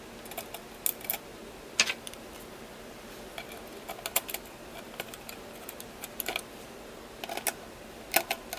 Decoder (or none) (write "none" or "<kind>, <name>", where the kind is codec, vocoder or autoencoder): none